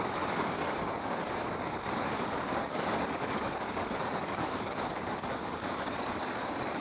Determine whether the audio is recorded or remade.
remade